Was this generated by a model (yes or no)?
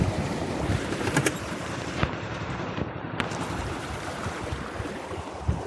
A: yes